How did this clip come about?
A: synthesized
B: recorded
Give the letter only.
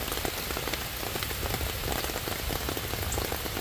B